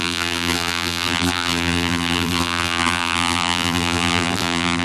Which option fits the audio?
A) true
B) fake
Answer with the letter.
B